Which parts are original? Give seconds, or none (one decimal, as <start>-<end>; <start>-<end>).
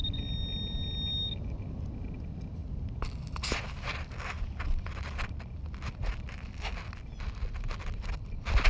0.0-8.7